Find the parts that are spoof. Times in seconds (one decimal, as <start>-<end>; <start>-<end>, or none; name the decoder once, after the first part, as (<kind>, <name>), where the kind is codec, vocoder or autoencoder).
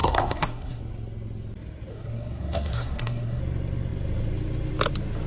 0.0-0.8 (codec, SNAC); 1.9-3.4